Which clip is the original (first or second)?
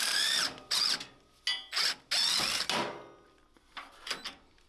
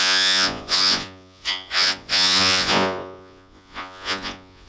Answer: first